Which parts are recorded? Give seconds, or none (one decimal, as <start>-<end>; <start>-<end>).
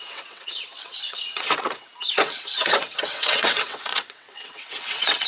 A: none